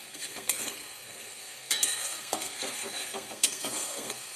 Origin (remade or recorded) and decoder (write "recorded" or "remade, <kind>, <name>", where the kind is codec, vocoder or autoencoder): remade, codec, SNAC